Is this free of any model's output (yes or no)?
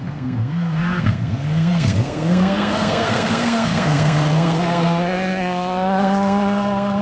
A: no